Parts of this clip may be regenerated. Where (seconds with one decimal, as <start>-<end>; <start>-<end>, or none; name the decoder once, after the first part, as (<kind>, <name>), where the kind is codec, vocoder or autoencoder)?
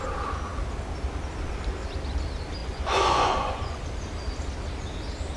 2.6-3.8 (vocoder, Vocos)